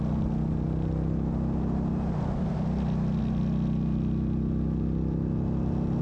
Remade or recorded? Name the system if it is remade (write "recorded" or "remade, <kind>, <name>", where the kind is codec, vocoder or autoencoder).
recorded